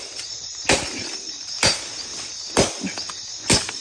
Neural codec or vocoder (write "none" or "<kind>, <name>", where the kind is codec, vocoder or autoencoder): none